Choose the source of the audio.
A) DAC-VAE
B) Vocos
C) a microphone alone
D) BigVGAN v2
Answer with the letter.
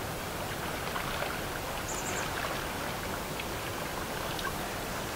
C